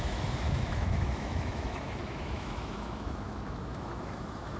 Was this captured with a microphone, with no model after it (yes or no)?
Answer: no